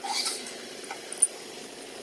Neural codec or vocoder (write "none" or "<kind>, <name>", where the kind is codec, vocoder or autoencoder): none